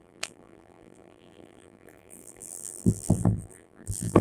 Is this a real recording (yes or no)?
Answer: no